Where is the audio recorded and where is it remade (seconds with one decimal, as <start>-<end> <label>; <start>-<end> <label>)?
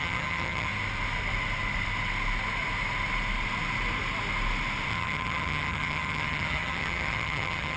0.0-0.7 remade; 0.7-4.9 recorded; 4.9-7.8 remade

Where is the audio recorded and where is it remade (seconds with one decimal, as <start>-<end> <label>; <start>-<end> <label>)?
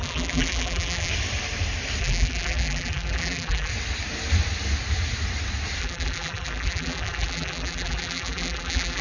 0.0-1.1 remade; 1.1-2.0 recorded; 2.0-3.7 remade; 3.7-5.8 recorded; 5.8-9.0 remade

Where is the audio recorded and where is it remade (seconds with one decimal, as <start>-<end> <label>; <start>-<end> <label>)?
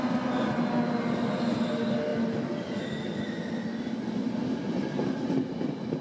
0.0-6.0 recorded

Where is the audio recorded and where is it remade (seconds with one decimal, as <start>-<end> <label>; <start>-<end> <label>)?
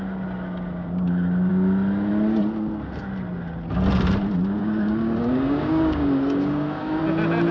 0.0-4.6 recorded; 4.6-7.0 remade; 7.0-7.5 recorded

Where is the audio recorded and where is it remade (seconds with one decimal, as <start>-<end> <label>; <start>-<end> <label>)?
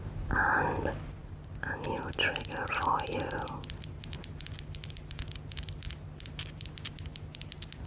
0.0-7.9 recorded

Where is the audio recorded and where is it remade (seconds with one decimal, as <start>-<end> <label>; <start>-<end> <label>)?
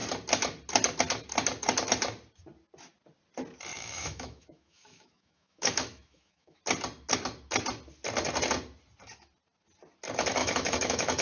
0.0-3.7 recorded; 3.7-6.6 remade; 6.6-10.4 recorded; 10.4-11.2 remade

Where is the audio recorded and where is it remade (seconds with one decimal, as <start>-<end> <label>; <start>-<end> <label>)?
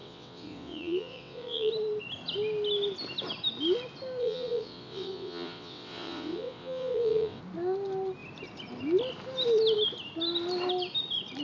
0.0-1.7 remade; 1.7-4.2 recorded; 4.2-7.4 remade; 7.4-11.4 recorded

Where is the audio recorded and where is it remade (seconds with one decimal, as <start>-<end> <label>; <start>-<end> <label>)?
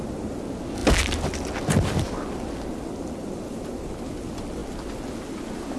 0.0-5.8 recorded